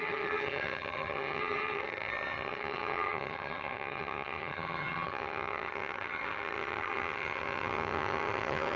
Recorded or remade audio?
remade